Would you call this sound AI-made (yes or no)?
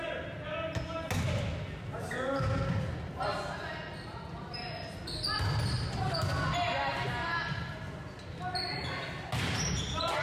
no